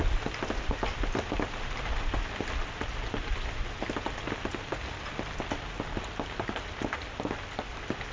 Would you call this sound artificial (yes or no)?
no